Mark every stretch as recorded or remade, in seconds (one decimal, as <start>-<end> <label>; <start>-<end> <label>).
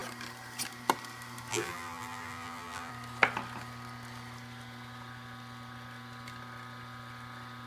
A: 0.0-1.5 recorded; 1.5-2.9 remade; 2.9-7.7 recorded